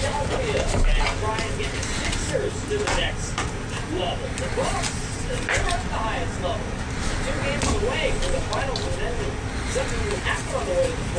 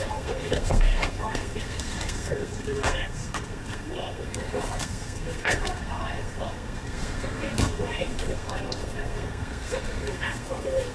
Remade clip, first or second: second